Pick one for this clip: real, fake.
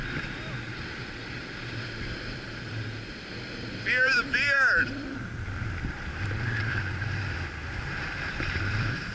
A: fake